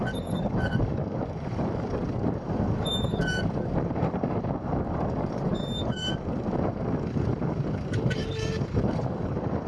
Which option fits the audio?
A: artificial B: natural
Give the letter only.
A